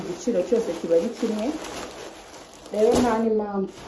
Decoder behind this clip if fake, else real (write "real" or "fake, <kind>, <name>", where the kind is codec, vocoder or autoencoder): real